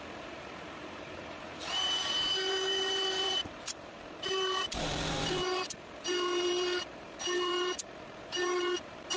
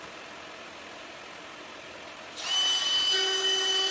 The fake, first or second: first